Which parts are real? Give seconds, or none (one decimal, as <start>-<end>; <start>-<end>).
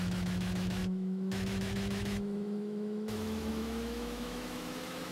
none